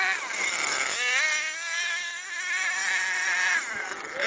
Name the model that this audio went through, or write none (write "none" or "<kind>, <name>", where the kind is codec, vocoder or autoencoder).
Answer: none